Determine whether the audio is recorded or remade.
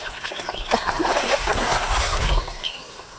remade